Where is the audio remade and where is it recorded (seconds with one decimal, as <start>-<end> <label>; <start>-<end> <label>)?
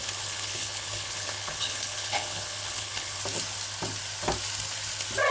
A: 0.0-3.2 remade; 3.2-5.3 recorded